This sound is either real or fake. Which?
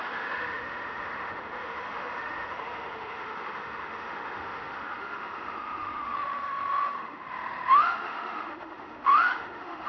fake